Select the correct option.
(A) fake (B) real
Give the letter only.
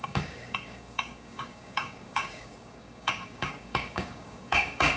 A